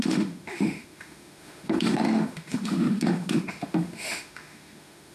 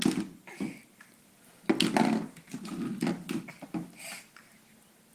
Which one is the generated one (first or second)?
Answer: first